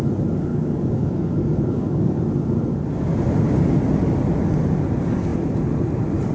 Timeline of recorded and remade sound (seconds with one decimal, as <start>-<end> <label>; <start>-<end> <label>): 0.0-0.5 recorded; 0.5-2.2 remade; 2.2-6.3 recorded